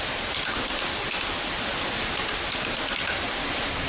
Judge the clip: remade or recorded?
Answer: recorded